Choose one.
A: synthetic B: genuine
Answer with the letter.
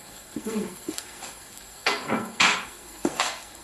A